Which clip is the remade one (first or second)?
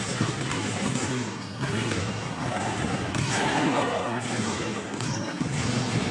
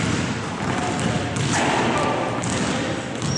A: first